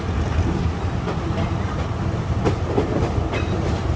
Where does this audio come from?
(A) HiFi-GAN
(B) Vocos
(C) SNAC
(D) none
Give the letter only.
D